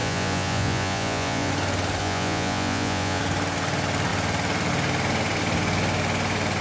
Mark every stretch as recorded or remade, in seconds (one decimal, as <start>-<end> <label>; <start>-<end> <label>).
0.0-1.5 remade; 1.5-2.0 recorded; 2.0-3.2 remade; 3.2-6.6 recorded